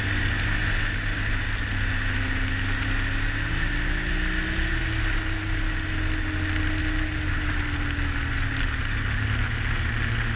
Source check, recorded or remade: recorded